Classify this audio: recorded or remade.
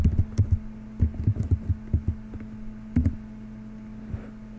recorded